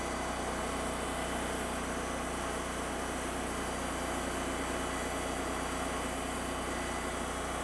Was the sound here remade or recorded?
recorded